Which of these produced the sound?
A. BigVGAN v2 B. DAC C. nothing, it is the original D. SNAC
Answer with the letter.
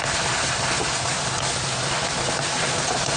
C